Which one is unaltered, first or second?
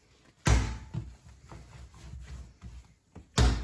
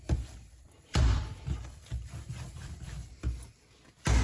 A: first